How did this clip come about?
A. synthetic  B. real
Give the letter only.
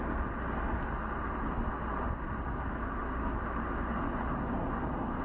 B